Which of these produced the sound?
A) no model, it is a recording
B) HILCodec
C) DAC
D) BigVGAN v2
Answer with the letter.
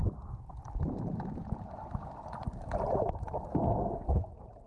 A